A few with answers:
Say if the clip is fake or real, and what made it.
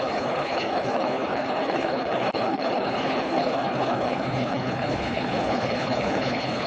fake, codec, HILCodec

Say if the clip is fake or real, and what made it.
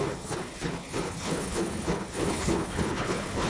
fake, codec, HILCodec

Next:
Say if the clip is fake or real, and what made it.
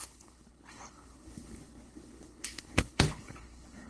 fake, codec, HILCodec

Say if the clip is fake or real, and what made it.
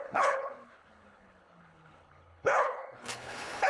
fake, codec, HILCodec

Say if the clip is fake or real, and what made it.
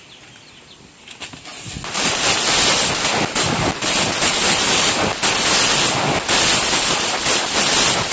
real